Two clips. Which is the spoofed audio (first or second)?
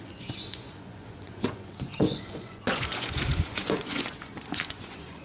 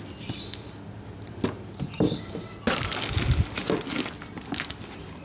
first